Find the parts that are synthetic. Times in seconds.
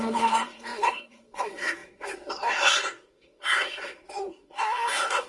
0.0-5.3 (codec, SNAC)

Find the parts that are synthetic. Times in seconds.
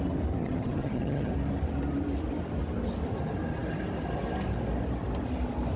0.4-1.3 (vocoder, HiFi-GAN)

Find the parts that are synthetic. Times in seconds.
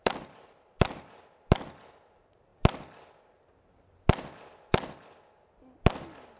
none